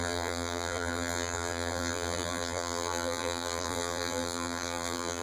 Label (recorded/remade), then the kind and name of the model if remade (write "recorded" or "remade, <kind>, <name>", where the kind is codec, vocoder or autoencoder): remade, vocoder, BigVGAN v2